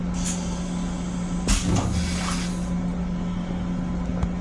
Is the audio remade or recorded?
recorded